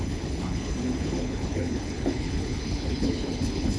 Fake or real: fake